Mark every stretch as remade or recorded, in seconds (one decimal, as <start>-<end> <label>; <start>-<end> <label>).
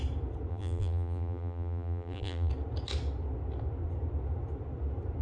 0.0-0.5 recorded; 0.5-2.5 remade; 2.5-5.2 recorded